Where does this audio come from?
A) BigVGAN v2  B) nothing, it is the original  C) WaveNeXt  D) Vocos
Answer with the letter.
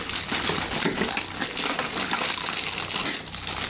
B